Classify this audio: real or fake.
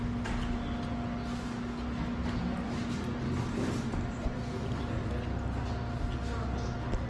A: real